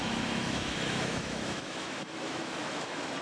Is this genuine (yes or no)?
no